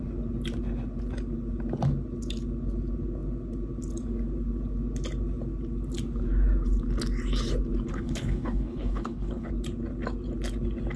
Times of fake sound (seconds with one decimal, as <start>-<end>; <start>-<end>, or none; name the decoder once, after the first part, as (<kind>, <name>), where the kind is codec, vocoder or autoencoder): 7.9-9.5 (codec, HILCodec)